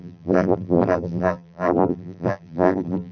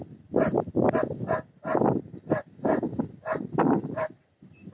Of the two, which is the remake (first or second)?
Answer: first